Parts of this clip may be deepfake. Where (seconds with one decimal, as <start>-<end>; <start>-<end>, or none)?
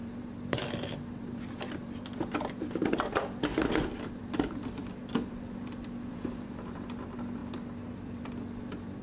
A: 0.0-7.4; 7.9-9.0